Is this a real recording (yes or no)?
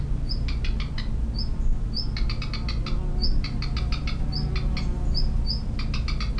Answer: yes